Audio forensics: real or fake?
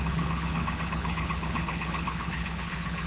fake